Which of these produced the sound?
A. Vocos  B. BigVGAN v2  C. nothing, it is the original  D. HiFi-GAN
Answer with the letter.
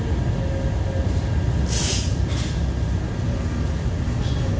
C